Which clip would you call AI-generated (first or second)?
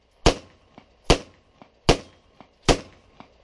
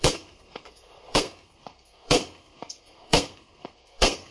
second